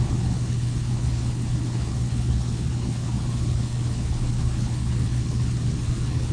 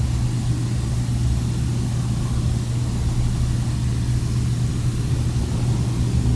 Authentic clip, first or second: second